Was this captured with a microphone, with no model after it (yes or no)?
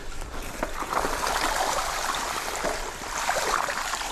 no